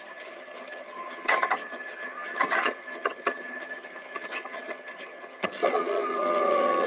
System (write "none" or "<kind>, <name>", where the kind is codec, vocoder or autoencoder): vocoder, HiFi-GAN